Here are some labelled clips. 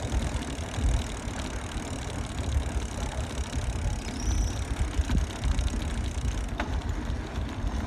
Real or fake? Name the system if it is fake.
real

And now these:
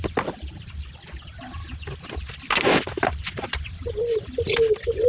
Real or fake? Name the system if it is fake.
real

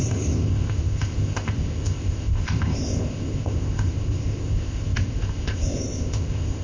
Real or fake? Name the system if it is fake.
fake, codec, ZipCodec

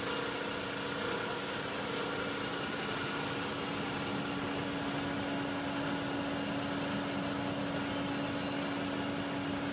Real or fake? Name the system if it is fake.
real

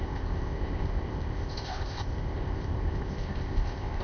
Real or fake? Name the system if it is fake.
fake, codec, ZipCodec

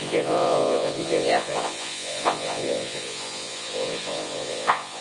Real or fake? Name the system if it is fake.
fake, vocoder, Vocos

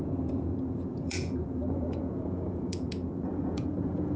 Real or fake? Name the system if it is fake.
fake, vocoder, Vocos